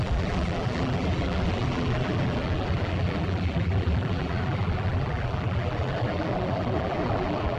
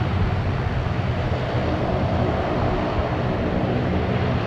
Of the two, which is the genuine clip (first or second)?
second